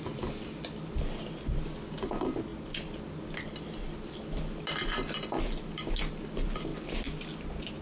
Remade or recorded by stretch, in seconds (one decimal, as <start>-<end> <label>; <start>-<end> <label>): 0.0-7.8 recorded